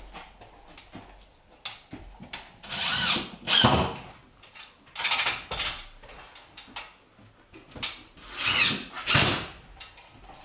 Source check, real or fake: real